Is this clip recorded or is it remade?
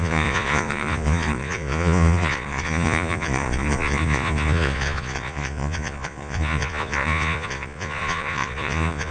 remade